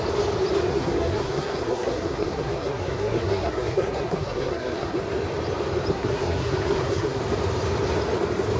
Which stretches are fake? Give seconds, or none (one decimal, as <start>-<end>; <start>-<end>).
0.7-5.0; 5.9-7.2